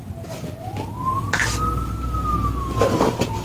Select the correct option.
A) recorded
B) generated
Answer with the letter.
A